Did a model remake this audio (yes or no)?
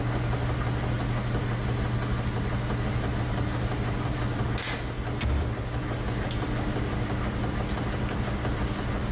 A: no